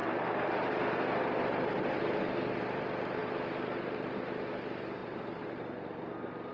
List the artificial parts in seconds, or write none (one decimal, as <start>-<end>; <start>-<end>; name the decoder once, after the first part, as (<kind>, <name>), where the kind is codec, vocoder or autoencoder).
0.0-6.5 (vocoder, BigVGAN v2)